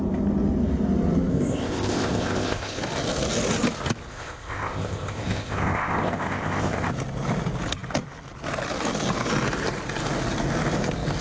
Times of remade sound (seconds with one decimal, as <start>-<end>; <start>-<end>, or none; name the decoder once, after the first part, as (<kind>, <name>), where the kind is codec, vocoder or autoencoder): 1.3-2.8 (codec, ZipCodec); 4.1-6.9